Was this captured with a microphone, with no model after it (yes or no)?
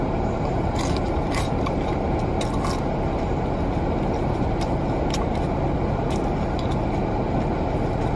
yes